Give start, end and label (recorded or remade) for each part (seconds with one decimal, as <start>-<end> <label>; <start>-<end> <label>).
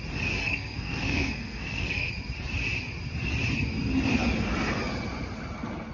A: 0.0-0.4 recorded; 0.4-2.1 remade; 2.1-5.9 recorded